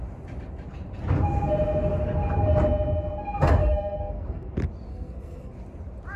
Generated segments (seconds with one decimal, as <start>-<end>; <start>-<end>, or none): 3.6-4.5; 4.9-5.5